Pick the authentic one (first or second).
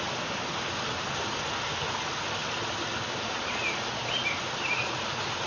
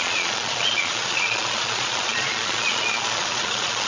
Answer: first